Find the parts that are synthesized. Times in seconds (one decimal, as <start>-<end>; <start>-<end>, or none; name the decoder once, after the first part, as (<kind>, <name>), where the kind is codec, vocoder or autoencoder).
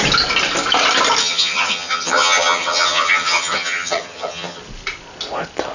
1.2-4.6 (vocoder, HiFi-GAN)